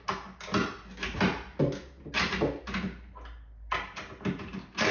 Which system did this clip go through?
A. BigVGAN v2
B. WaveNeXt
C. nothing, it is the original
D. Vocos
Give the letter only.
C